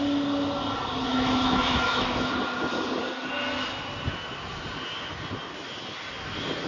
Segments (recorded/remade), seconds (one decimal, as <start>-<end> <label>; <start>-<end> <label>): 0.0-1.1 recorded; 1.1-2.3 remade; 2.3-6.7 recorded